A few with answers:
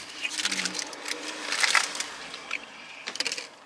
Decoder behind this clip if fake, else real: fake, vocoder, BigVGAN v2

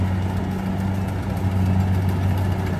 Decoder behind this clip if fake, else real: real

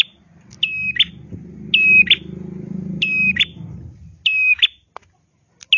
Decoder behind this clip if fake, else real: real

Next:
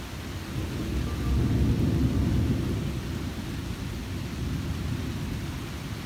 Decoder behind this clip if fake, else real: real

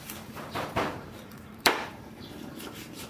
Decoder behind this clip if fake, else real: fake, vocoder, BigVGAN v2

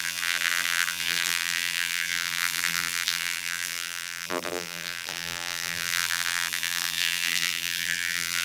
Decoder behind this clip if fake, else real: fake, vocoder, BigVGAN v2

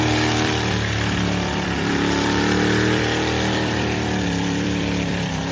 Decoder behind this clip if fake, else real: fake, vocoder, BigVGAN v2